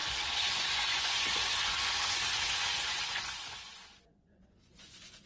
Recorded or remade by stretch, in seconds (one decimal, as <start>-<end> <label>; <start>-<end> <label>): 0.0-5.3 remade